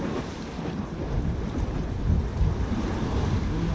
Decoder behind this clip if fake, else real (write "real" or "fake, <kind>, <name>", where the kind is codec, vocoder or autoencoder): real